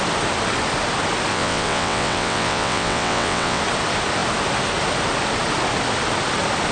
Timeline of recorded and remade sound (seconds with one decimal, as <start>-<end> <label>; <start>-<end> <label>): 0.0-1.3 recorded; 1.3-3.6 remade; 3.6-6.7 recorded